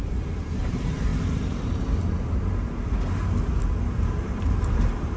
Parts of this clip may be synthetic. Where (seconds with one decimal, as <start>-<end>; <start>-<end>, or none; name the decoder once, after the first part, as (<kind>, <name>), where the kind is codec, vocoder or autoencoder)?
0.0-1.1 (vocoder, BigVGAN v2); 3.9-5.2